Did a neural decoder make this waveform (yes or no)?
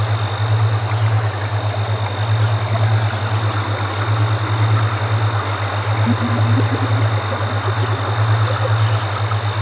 no